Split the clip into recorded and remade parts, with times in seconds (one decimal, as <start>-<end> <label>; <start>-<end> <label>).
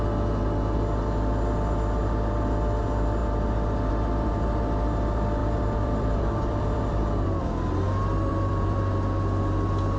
0.0-5.4 recorded; 5.4-7.4 remade; 7.4-8.3 recorded; 8.3-8.8 remade; 8.8-10.0 recorded